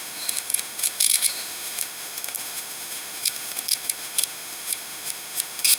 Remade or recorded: remade